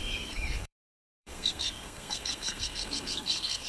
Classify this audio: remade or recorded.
remade